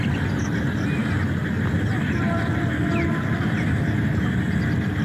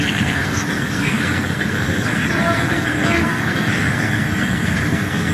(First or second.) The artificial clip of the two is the second